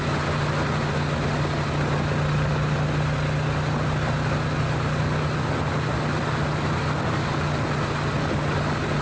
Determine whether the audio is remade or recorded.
recorded